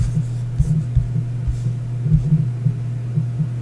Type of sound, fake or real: real